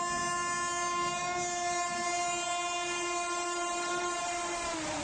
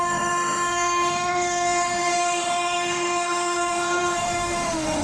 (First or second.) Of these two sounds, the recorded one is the first